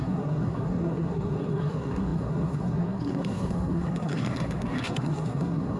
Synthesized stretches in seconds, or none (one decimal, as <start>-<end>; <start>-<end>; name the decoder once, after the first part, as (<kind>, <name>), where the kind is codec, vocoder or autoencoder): 0.0-5.8 (codec, SNAC)